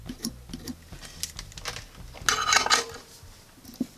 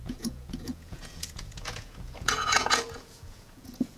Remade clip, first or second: second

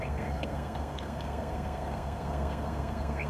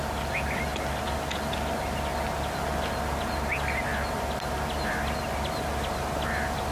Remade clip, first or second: first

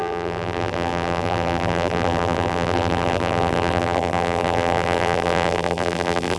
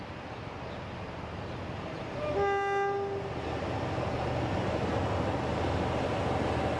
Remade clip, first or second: first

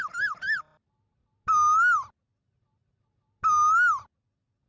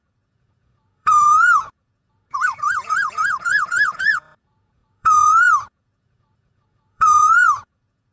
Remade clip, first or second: second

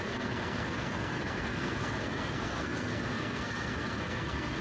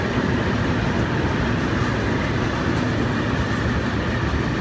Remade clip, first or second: first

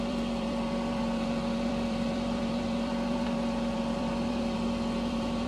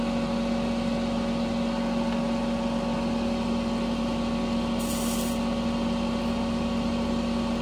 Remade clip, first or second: first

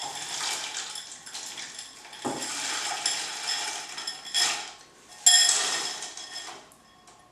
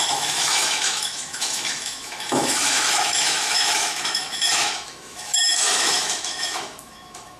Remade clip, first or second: second